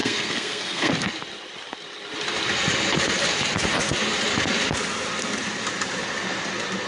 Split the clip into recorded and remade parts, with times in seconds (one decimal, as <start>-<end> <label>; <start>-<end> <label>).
0.0-0.9 remade; 0.9-6.9 recorded

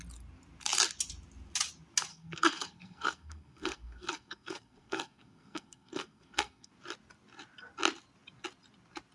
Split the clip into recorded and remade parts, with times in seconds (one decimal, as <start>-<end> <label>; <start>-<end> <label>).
0.0-2.1 recorded; 2.1-6.7 remade; 6.7-9.1 recorded

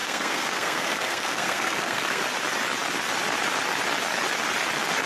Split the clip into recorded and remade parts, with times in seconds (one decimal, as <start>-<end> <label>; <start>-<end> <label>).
0.0-2.2 remade; 2.2-5.1 recorded

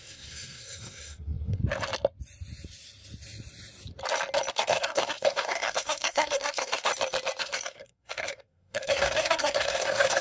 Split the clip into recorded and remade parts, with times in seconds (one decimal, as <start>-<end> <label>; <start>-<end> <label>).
0.0-1.6 remade; 1.6-4.5 recorded; 4.5-6.9 remade; 6.9-7.4 recorded; 7.4-10.2 remade

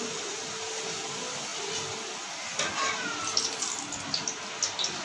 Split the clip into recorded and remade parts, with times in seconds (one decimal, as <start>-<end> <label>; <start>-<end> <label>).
0.0-5.0 recorded